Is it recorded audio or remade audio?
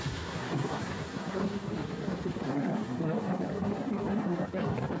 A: remade